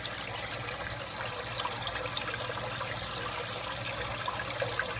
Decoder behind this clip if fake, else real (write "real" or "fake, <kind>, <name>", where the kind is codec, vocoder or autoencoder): real